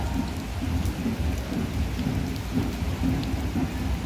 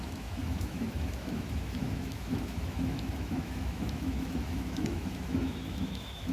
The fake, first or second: second